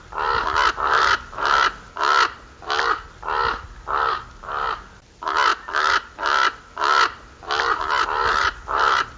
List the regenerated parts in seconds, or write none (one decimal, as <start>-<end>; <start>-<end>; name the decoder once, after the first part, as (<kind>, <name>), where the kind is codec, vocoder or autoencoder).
none